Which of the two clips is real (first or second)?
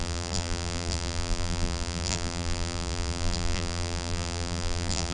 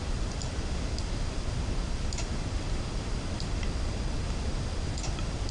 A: second